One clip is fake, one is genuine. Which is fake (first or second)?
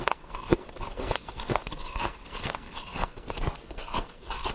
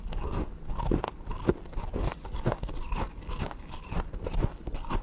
first